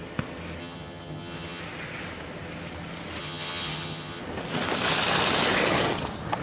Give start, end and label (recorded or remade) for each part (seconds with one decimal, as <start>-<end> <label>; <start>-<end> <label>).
0.0-0.6 recorded; 0.6-1.6 remade; 1.6-3.2 recorded; 3.2-4.2 remade; 4.2-6.4 recorded